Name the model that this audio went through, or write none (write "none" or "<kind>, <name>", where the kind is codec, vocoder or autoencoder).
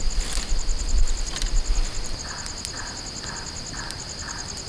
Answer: none